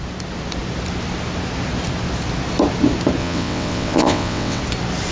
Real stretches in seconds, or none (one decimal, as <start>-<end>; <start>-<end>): 0.0-3.2; 4.6-5.1